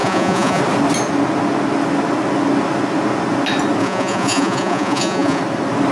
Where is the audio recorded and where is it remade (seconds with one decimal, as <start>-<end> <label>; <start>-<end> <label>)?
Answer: 0.0-0.6 remade; 0.6-3.8 recorded; 3.8-5.4 remade; 5.4-5.9 recorded